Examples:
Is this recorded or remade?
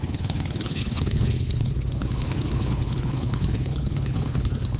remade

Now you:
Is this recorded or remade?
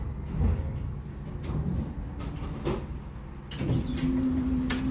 recorded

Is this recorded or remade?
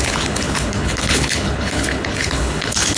remade